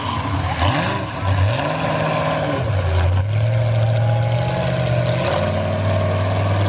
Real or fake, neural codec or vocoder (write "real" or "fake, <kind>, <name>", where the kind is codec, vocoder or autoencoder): real